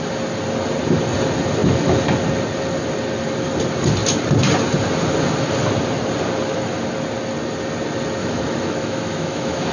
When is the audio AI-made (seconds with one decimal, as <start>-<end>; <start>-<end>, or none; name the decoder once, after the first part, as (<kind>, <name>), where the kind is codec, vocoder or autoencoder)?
8.2-9.7 (autoencoder, DAC-VAE)